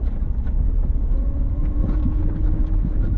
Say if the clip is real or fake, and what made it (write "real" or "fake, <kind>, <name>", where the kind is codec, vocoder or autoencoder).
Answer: fake, vocoder, Vocos